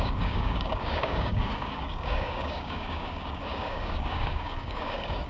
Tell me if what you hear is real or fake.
fake